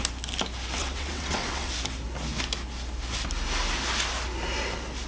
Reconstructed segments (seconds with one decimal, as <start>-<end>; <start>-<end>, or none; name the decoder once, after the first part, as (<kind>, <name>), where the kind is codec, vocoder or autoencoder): 0.8-1.7 (vocoder, WaveNeXt)